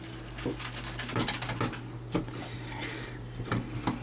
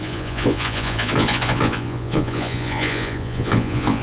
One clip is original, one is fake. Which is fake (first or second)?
second